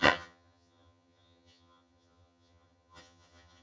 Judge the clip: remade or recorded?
remade